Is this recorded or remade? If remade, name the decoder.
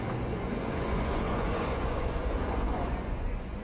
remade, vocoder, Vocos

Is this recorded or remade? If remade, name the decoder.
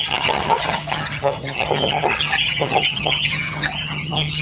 remade, vocoder, HiFi-GAN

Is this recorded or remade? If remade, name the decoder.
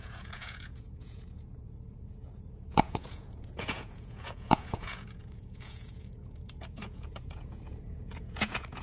remade, vocoder, Vocos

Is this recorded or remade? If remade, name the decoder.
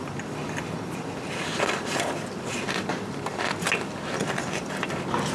recorded